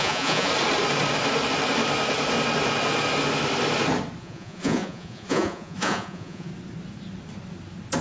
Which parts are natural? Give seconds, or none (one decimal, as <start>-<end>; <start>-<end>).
0.5-4.2; 6.5-8.0